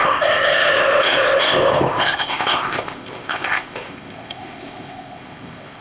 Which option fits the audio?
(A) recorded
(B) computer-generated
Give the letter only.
B